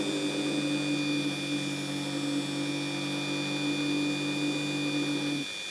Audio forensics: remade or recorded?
recorded